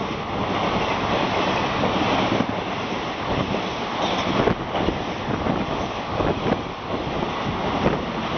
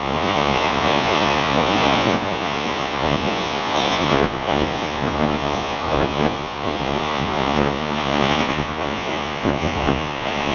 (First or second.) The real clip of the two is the first